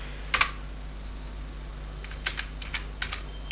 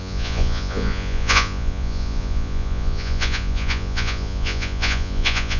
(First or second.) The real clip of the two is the first